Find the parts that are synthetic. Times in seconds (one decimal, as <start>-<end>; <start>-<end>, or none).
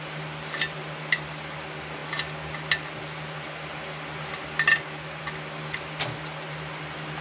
none